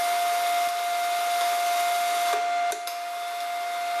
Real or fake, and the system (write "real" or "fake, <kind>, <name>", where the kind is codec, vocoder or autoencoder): real